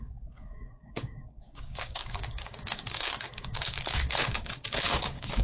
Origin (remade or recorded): remade